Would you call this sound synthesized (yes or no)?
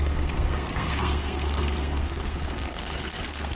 yes